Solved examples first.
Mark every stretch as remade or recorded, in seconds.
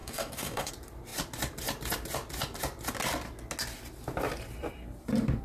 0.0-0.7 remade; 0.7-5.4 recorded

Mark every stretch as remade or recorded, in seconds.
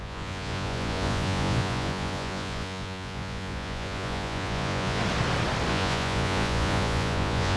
0.0-5.0 remade; 5.0-5.7 recorded; 5.7-7.6 remade